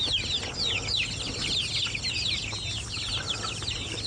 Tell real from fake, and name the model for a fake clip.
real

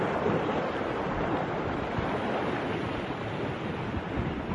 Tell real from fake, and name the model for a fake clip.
real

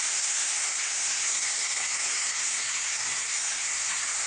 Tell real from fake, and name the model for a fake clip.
fake, codec, SNAC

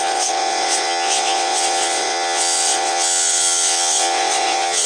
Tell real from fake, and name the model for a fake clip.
fake, vocoder, WaveNeXt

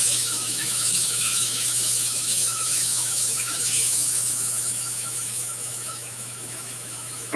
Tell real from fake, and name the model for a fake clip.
fake, autoencoder, DAC-VAE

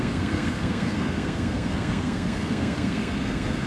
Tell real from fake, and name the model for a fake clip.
fake, codec, SNAC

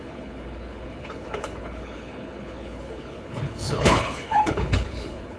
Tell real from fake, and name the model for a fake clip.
fake, codec, HILCodec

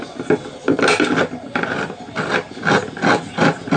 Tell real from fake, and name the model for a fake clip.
real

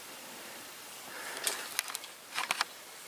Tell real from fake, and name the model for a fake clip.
real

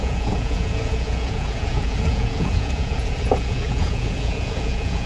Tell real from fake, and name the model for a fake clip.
fake, vocoder, Vocos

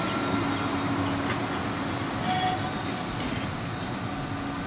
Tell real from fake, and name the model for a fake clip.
real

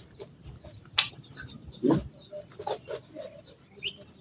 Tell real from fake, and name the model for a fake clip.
real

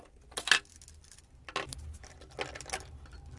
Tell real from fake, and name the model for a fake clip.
real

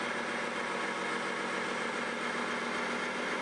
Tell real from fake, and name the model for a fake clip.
real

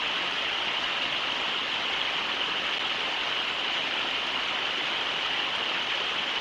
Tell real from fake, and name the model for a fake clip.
real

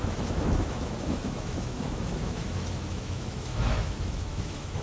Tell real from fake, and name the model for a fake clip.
fake, autoencoder, DAC-VAE